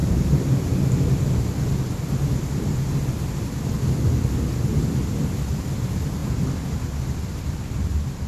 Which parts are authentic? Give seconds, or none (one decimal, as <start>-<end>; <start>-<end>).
0.0-8.3